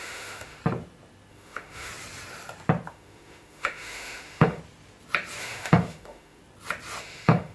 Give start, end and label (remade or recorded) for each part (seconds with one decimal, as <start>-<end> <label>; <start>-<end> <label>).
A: 0.0-0.6 remade; 0.6-1.3 recorded; 1.3-1.9 remade; 1.9-2.9 recorded; 2.9-4.6 remade; 4.6-5.4 recorded; 5.4-6.4 remade; 6.4-7.0 recorded; 7.0-7.5 remade